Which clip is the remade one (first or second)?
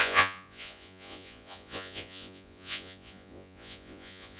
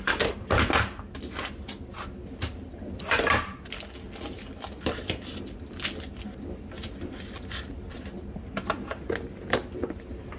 first